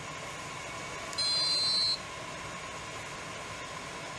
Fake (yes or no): no